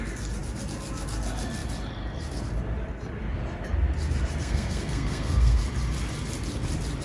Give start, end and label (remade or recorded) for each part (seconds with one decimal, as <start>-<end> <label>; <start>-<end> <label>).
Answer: 0.0-4.4 recorded; 4.4-5.6 remade; 5.6-7.0 recorded